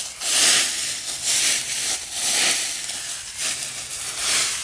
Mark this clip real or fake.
real